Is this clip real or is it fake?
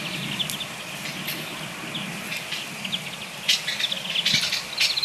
real